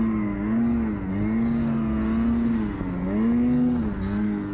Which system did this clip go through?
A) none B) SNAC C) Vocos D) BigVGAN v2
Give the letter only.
A